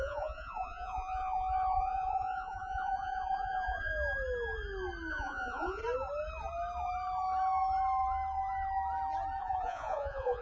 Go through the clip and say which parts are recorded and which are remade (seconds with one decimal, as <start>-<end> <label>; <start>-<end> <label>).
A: 0.0-3.9 remade; 3.9-5.1 recorded; 5.1-5.8 remade; 5.8-9.4 recorded; 9.4-10.4 remade